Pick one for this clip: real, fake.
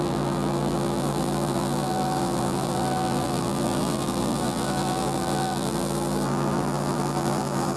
fake